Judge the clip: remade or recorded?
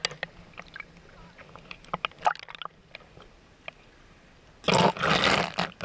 recorded